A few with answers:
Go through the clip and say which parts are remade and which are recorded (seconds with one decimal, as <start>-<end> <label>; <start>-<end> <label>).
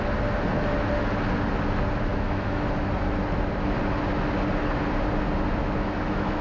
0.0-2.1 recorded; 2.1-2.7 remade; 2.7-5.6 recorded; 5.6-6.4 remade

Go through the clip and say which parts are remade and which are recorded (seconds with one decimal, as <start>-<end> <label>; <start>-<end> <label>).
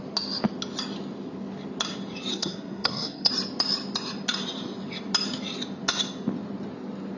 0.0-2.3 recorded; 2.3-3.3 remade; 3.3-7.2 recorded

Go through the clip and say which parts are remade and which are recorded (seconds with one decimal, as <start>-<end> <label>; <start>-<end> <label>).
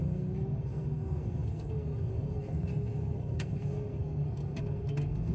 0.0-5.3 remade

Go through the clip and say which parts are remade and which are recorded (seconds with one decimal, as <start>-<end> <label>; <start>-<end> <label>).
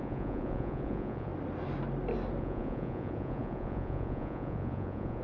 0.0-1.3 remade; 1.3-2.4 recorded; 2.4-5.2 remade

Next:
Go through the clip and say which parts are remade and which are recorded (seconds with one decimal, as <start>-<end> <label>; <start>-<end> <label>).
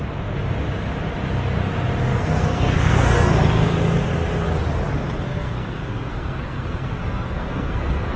0.0-2.1 recorded; 2.1-3.7 remade; 3.7-5.3 recorded; 5.3-8.2 remade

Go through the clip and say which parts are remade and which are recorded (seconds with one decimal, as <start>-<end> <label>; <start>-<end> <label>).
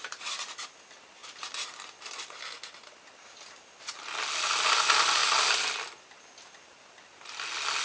0.0-7.8 recorded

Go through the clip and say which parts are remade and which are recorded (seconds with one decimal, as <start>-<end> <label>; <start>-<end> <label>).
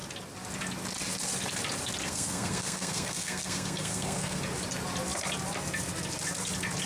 0.0-2.0 recorded; 2.0-4.4 remade; 4.4-6.9 recorded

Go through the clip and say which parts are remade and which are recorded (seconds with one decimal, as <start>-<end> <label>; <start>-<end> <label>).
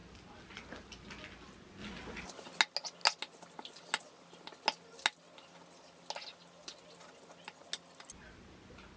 0.0-9.0 recorded